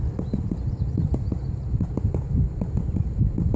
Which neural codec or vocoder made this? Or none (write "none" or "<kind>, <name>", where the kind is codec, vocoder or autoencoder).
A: none